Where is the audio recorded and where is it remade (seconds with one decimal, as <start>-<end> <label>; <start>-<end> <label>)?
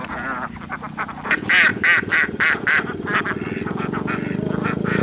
0.0-5.0 recorded